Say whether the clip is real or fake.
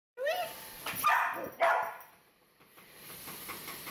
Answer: fake